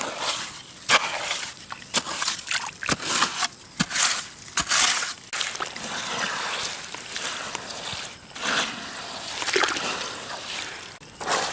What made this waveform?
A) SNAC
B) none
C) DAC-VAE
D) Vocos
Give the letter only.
B